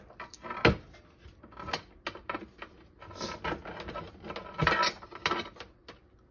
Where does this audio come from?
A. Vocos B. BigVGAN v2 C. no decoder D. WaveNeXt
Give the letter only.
C